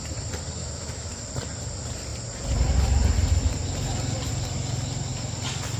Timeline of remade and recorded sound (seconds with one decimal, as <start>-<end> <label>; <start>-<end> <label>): 0.0-0.6 recorded; 0.6-1.2 remade; 1.2-5.8 recorded